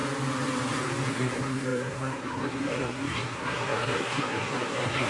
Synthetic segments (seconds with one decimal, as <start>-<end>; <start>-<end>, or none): 1.1-5.1